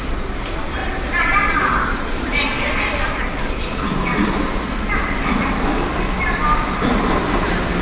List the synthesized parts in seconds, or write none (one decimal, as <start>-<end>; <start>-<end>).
none